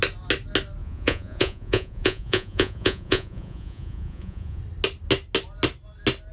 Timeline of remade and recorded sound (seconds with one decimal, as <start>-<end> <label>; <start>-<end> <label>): 0.0-0.8 recorded; 0.8-4.6 remade; 4.6-6.3 recorded